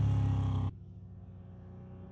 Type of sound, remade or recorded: recorded